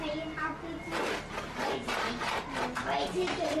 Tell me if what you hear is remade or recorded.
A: recorded